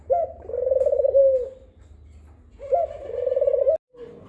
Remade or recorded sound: recorded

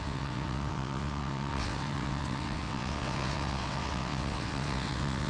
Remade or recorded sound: remade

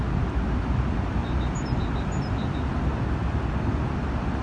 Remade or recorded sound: recorded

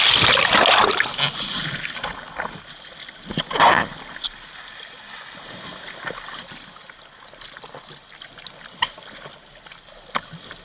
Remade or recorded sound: recorded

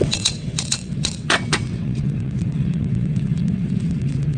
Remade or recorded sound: remade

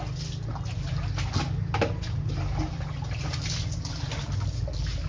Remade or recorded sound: recorded